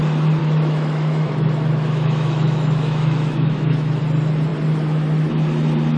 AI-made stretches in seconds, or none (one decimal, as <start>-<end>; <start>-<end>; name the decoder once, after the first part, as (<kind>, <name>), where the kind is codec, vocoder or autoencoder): 0.4-4.0 (autoencoder, DAC-VAE)